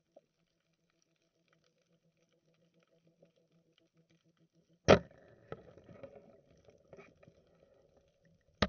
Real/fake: real